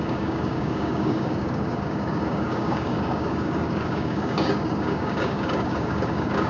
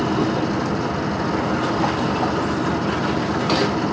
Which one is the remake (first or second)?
first